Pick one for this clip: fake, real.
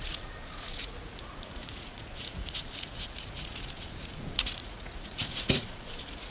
fake